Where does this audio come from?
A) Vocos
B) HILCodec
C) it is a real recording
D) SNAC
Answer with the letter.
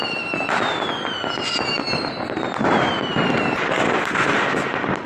C